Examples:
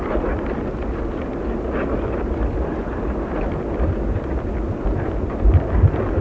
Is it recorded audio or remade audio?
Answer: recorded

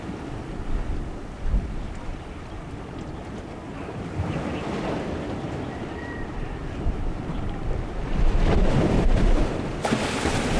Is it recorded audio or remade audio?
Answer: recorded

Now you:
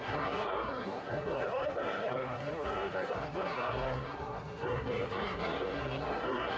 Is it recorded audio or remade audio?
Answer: remade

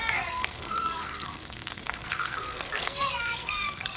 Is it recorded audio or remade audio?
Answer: remade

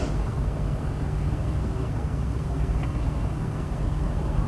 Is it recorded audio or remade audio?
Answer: remade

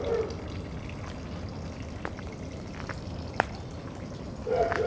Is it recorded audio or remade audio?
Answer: recorded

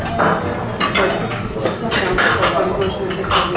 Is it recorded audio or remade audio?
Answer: recorded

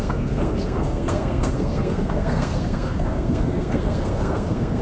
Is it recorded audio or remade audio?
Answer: remade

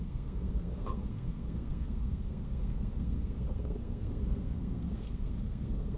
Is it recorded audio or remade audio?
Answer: remade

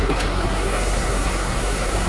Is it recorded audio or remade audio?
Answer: remade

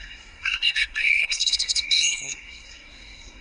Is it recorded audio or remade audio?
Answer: remade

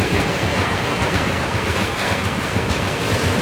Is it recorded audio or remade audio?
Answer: remade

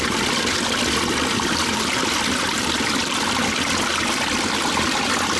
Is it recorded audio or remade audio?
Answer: recorded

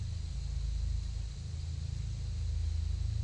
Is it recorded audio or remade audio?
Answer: recorded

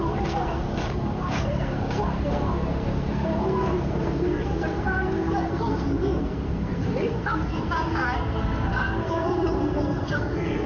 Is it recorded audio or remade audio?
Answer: remade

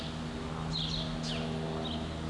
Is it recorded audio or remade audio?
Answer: recorded